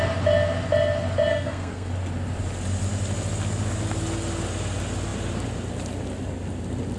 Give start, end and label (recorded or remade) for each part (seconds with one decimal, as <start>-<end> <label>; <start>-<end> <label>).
0.0-1.3 recorded; 1.3-1.9 remade; 1.9-7.0 recorded